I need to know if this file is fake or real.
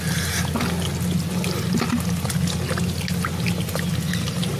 real